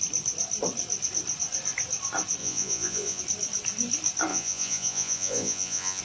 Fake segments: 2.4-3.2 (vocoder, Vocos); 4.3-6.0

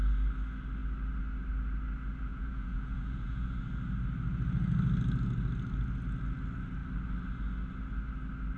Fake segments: 2.3-3.6 (vocoder, Vocos)

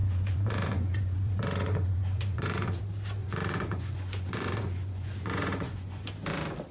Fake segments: 0.0-2.8 (vocoder, Vocos); 3.2-6.1

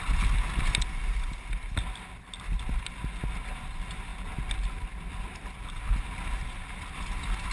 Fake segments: none

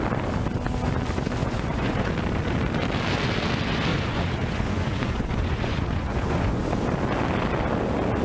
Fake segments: 1.4-2.1 (vocoder, Vocos); 3.9-6.6

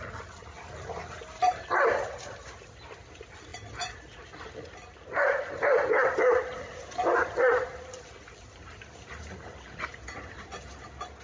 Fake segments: none

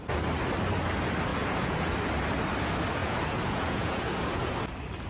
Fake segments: 1.3-2.0 (vocoder, Vocos); 3.0-4.5